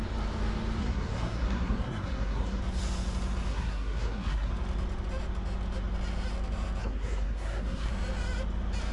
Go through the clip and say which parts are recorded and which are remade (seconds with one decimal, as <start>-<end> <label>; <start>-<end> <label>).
0.0-0.8 recorded; 0.8-2.6 remade; 2.6-3.5 recorded; 3.5-4.5 remade; 4.5-6.8 recorded; 6.8-7.9 remade; 7.9-8.9 recorded